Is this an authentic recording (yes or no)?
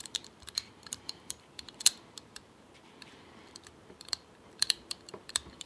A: no